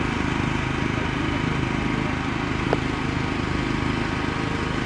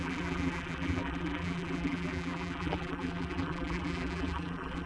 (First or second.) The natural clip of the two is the first